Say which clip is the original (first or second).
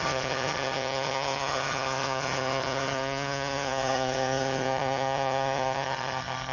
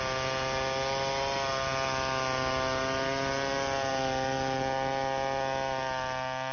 second